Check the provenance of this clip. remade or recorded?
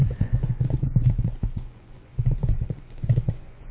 remade